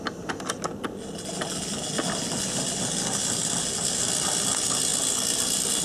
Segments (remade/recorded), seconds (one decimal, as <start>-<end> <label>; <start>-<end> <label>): 0.0-5.8 recorded